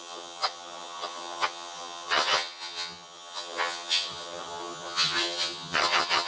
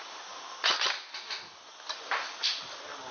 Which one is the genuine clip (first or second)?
second